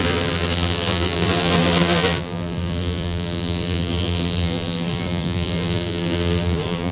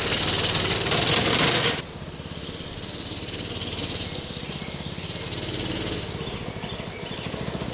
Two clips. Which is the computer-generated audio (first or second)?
first